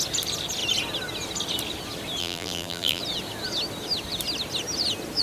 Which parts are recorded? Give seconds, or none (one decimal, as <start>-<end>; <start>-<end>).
0.0-2.2; 3.0-5.2